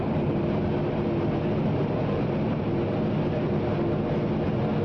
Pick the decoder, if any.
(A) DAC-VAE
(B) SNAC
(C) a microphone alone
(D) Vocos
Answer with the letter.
C